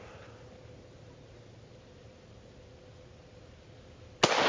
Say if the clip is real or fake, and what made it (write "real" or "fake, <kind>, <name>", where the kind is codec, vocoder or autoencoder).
real